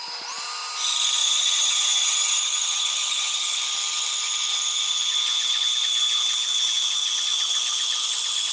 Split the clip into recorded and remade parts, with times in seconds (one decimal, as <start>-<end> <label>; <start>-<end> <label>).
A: 0.0-1.2 recorded; 1.2-3.6 remade; 3.6-8.5 recorded